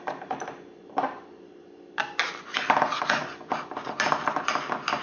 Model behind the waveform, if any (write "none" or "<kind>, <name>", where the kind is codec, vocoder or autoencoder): none